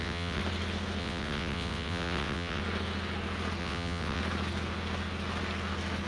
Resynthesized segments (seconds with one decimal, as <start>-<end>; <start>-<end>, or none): 0.0-0.4; 1.0-2.6; 3.6-4.2